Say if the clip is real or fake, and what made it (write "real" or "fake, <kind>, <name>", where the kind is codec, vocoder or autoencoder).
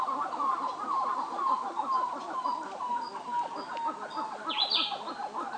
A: real